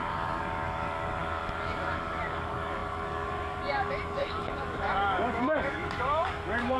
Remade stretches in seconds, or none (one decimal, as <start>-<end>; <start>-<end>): 0.0-6.8